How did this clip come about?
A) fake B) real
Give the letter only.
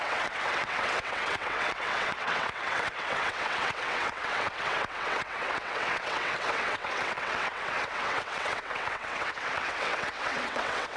A